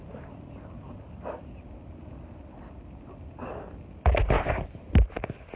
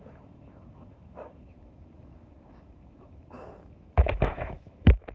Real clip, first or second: first